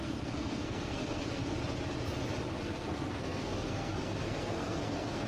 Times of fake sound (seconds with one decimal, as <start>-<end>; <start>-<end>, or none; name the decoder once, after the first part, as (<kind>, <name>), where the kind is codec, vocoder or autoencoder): 0.0-1.4 (codec, SNAC); 2.6-5.3